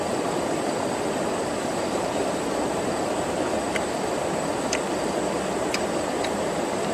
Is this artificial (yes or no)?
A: no